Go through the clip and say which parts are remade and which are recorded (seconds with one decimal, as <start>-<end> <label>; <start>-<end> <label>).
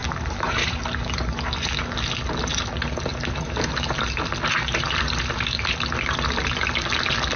0.0-0.8 remade; 0.8-3.1 recorded; 3.1-4.2 remade; 4.2-7.4 recorded